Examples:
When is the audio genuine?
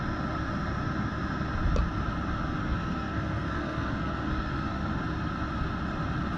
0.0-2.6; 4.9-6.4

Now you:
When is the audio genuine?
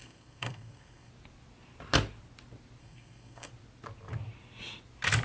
1.1-2.8; 3.5-5.2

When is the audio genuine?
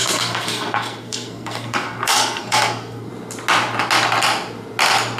3.1-5.2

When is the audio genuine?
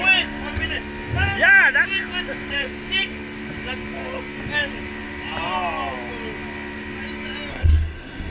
0.0-7.5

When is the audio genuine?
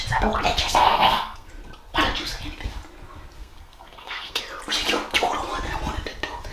0.0-0.6; 1.5-3.4; 4.4-6.5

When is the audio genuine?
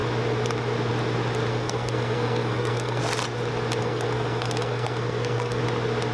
0.0-1.5; 3.0-3.8; 5.6-6.1